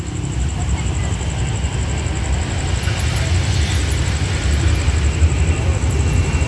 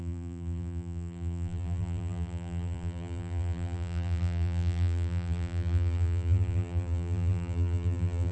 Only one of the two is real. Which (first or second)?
first